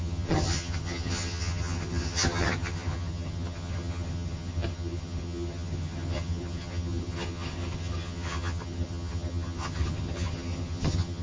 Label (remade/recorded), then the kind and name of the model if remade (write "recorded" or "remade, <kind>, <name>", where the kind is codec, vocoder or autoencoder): remade, vocoder, HiFi-GAN